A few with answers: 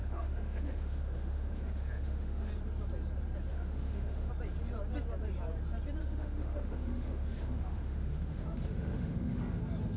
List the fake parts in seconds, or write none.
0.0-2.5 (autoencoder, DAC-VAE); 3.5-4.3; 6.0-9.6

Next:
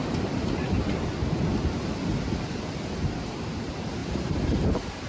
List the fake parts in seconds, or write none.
4.0-4.6 (vocoder, BigVGAN v2)

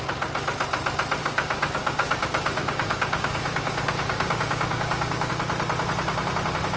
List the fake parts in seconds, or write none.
1.2-5.3 (codec, DAC)

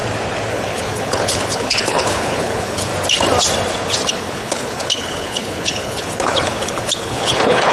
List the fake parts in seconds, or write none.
0.5-2.9 (codec, HILCodec); 4.1-7.7

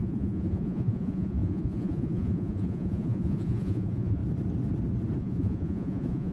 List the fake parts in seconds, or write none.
0.0-4.2 (vocoder, Vocos); 5.2-6.3

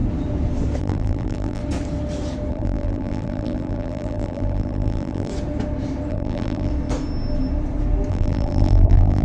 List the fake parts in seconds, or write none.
0.8-1.6 (vocoder, BigVGAN v2); 2.5-5.3; 6.1-6.7; 8.1-9.2

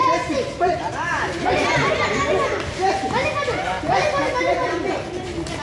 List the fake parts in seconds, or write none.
0.0-1.9 (vocoder, BigVGAN v2)

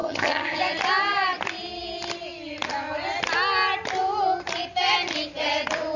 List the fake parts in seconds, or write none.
0.0-0.6 (vocoder, HiFi-GAN)